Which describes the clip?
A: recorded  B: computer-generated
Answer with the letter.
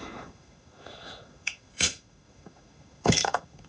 B